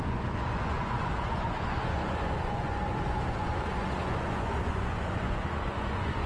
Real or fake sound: fake